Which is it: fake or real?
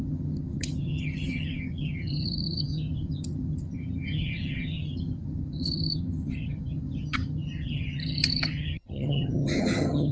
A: fake